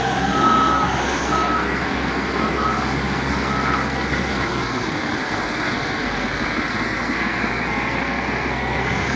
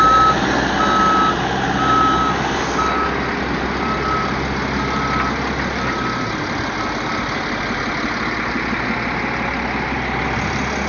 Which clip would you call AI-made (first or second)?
first